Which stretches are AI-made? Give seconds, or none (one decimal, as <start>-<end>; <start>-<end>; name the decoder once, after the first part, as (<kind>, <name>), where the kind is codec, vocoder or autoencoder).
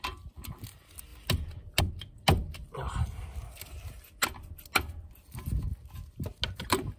none